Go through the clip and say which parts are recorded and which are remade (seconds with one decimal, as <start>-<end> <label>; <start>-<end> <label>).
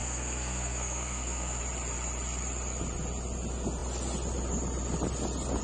0.0-1.6 remade; 1.6-5.6 recorded